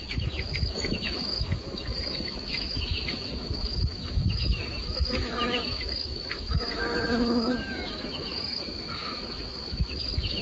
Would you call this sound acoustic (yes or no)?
no